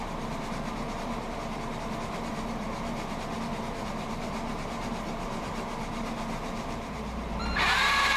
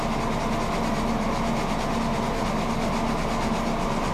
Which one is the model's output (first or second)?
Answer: first